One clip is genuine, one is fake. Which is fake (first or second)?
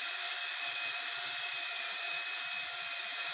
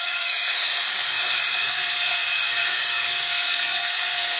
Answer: second